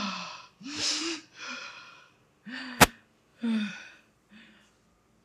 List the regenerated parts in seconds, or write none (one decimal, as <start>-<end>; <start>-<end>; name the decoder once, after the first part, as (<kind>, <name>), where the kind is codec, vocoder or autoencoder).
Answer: 3.3-4.3 (vocoder, BigVGAN v2)